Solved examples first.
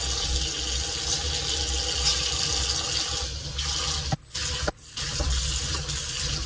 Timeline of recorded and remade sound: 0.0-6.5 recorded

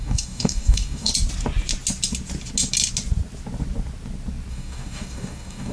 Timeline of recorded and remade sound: 0.0-1.1 remade; 1.1-4.5 recorded; 4.5-5.7 remade

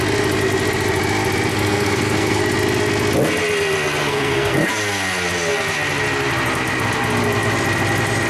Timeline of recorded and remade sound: 0.0-1.5 recorded; 1.5-2.4 remade; 2.4-4.0 recorded; 4.0-4.7 remade; 4.7-8.3 recorded

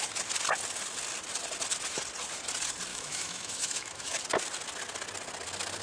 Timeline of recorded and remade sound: 0.0-2.9 recorded; 2.9-4.2 remade; 4.2-5.8 recorded

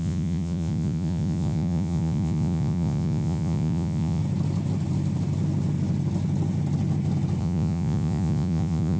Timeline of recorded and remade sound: 0.0-4.2 remade; 4.2-7.4 recorded; 7.4-9.0 remade

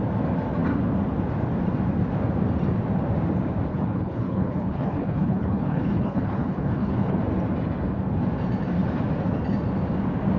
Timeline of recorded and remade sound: 0.0-3.7 recorded; 3.7-7.2 remade; 7.2-10.4 recorded

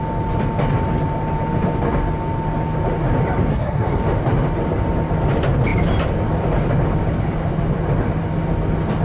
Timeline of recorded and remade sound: 0.0-3.5 recorded; 3.5-4.0 remade; 4.0-9.0 recorded

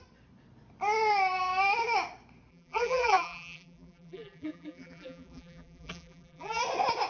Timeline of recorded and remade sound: 0.0-2.5 recorded; 2.5-6.6 remade; 6.6-7.1 recorded